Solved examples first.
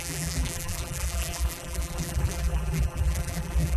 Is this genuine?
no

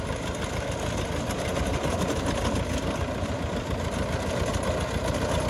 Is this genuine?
yes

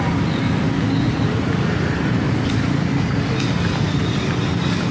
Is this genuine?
yes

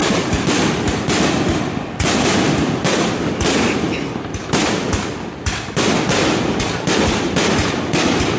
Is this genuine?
no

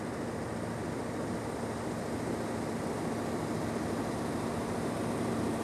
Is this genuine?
yes